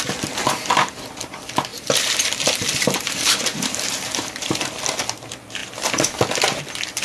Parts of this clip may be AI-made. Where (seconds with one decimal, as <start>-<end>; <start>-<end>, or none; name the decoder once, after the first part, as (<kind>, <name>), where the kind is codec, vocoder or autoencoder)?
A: 1.7-4.8 (vocoder, BigVGAN v2)